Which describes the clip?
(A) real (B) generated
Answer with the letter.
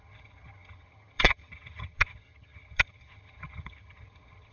B